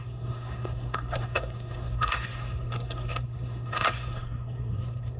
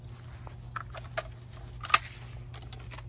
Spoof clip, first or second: first